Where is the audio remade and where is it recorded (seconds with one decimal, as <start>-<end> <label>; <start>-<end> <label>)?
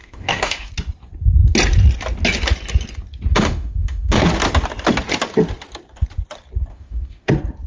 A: 0.0-0.7 remade; 0.7-3.3 recorded; 3.3-4.2 remade; 4.2-6.7 recorded; 6.7-7.3 remade; 7.3-7.7 recorded